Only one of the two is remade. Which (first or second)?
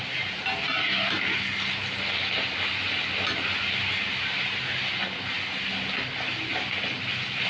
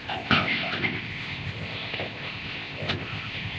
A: second